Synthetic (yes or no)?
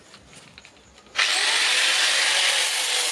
no